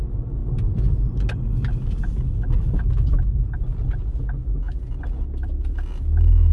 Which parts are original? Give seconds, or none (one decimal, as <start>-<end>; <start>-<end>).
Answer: 0.0-6.5